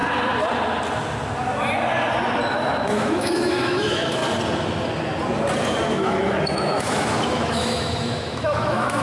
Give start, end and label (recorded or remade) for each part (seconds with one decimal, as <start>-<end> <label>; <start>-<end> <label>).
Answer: 0.0-2.5 recorded; 2.5-4.2 remade; 4.2-5.9 recorded; 5.9-9.0 remade